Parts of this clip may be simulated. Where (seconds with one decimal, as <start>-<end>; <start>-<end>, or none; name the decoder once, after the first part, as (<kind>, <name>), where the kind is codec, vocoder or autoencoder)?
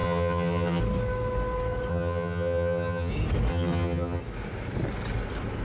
0.0-0.8 (vocoder, HiFi-GAN); 1.9-3.1; 3.5-4.2